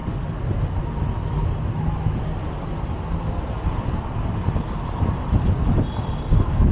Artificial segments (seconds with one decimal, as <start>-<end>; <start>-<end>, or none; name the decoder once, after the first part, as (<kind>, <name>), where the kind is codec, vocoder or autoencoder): none